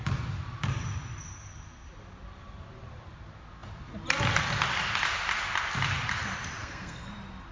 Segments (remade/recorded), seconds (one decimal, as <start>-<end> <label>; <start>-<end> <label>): 0.0-6.6 recorded; 6.6-7.1 remade; 7.1-7.5 recorded